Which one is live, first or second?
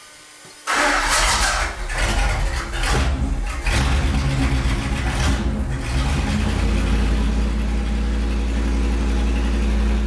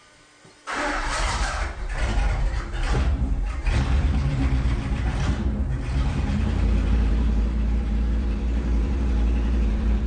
first